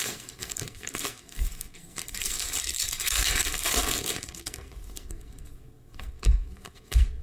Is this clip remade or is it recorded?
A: remade